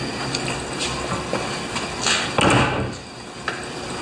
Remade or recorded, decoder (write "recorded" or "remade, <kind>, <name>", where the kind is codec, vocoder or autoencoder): recorded